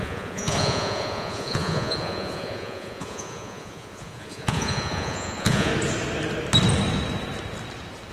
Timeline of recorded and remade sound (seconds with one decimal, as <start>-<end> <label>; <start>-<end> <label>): 0.0-5.7 remade; 5.7-8.1 recorded